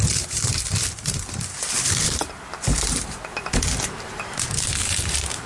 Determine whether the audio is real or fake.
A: fake